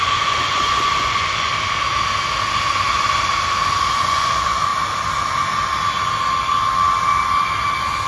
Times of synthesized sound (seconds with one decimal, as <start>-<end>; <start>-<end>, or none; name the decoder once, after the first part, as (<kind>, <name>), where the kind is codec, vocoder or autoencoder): 0.0-1.5 (vocoder, Vocos); 3.9-4.7